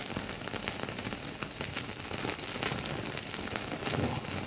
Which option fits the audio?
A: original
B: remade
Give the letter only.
A